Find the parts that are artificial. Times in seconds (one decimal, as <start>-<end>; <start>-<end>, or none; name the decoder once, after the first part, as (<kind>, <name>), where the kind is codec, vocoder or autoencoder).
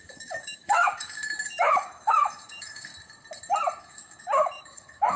0.0-2.9 (autoencoder, DAC-VAE); 3.8-5.2